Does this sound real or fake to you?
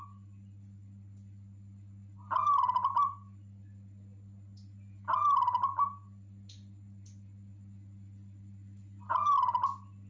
real